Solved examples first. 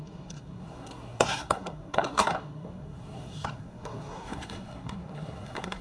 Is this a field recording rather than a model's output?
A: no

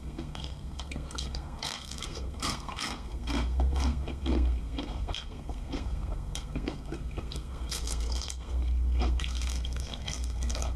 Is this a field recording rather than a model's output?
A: no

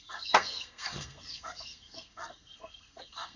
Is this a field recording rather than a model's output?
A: no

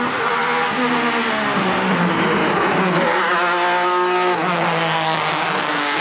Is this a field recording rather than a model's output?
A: yes